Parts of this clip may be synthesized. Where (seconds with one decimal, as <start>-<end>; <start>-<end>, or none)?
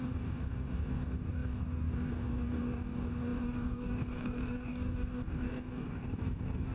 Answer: 0.0-6.7